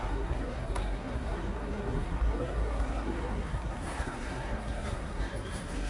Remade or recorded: remade